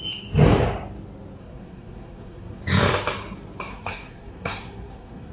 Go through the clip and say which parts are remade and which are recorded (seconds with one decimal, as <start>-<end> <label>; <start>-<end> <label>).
0.0-1.4 recorded; 1.4-2.6 remade; 2.6-3.7 recorded; 3.7-5.3 remade